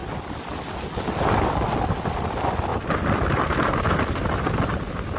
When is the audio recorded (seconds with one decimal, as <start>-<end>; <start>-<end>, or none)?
0.0-5.2